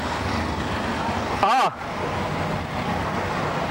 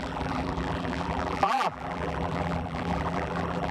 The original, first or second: first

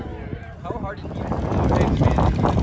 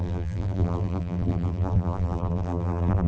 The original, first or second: first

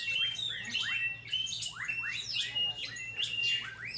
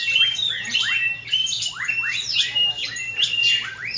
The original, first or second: first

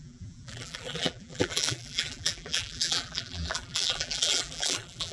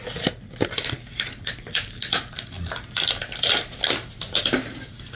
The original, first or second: second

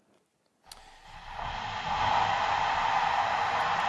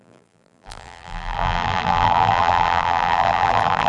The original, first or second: first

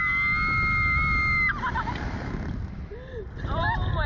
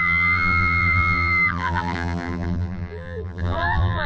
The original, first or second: first